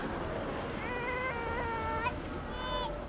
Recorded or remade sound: recorded